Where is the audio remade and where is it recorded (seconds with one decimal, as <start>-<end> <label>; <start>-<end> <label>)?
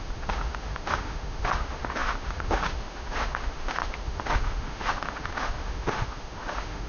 0.0-6.9 remade